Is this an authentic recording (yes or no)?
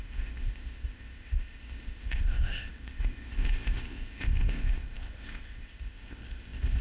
no